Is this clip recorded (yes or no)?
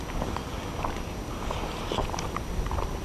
yes